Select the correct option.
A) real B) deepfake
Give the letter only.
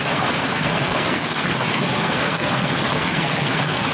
B